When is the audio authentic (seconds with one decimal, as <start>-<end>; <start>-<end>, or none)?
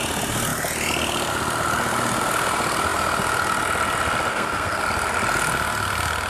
0.0-4.3; 4.8-6.3